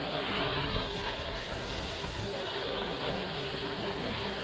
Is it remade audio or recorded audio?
remade